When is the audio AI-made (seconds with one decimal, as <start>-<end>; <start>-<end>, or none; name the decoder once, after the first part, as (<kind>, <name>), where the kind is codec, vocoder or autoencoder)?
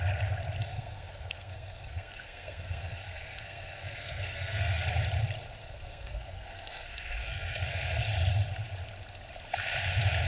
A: 0.6-4.8 (codec, SNAC); 5.6-8.0